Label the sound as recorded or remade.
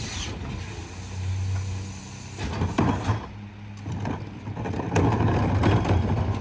recorded